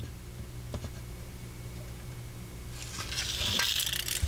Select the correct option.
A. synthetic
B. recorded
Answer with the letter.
B